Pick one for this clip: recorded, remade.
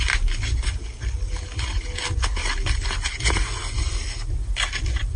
recorded